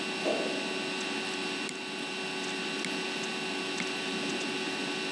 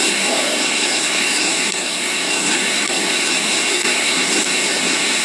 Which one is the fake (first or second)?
second